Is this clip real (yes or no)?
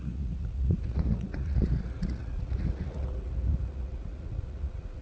no